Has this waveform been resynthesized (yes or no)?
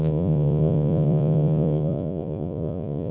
yes